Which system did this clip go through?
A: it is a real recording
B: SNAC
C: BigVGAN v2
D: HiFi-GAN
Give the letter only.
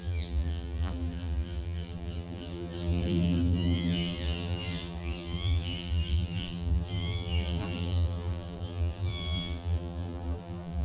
C